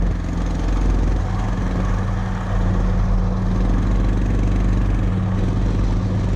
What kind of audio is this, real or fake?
real